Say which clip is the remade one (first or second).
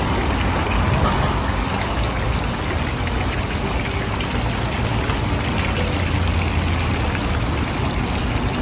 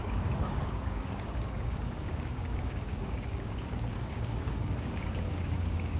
second